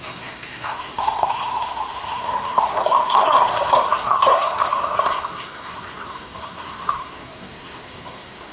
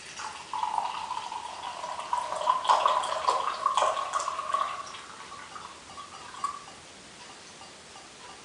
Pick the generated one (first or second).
first